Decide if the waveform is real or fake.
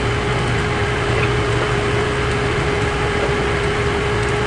real